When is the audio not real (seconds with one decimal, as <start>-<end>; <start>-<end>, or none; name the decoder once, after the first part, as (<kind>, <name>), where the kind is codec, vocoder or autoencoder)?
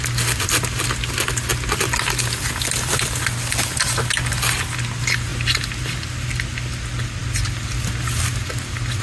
none